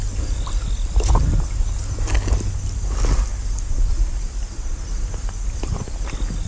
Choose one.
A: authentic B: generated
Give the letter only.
A